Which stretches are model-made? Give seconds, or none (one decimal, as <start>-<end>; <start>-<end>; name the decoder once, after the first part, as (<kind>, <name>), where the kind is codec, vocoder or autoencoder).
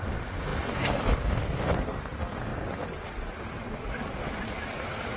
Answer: none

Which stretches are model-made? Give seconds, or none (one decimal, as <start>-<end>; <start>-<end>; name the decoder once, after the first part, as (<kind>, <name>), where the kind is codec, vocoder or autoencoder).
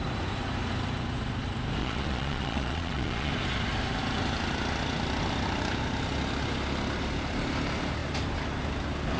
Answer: 1.8-3.3 (vocoder, Vocos)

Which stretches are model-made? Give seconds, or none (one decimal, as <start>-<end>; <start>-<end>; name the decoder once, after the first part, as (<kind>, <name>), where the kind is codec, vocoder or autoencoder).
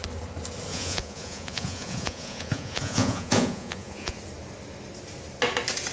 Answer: 0.7-4.2 (vocoder, Vocos)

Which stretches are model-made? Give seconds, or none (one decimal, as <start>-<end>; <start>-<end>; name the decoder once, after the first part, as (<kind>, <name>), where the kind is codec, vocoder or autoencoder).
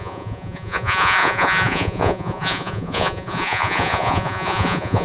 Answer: 0.0-5.0 (vocoder, Vocos)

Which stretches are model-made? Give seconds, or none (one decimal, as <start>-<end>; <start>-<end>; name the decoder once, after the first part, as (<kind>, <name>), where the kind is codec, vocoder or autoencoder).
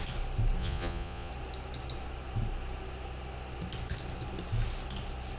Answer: 0.6-1.3 (vocoder, Vocos)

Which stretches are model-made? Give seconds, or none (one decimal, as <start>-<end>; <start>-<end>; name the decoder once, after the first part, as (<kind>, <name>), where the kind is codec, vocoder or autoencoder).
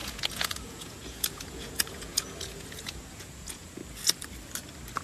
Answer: 0.0-3.8 (vocoder, Vocos)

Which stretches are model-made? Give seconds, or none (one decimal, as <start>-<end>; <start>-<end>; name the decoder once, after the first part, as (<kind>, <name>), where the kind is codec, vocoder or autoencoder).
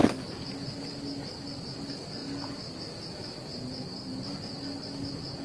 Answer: none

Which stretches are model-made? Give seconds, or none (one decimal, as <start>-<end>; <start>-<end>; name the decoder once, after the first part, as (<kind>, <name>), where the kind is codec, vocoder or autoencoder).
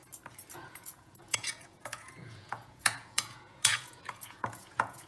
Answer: 0.7-5.1 (vocoder, Vocos)